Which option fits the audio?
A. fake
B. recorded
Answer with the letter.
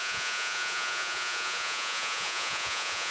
A